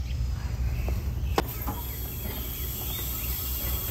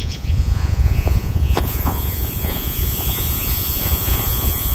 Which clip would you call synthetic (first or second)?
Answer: second